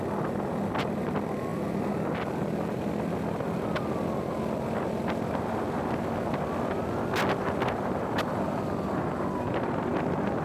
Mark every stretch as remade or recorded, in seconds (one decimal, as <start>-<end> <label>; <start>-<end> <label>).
0.0-10.4 recorded